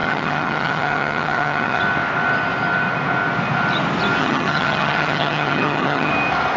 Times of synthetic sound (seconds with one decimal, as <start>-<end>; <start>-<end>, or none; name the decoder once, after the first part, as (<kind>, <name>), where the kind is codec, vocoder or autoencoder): 0.0-1.8 (vocoder, HiFi-GAN); 4.2-6.1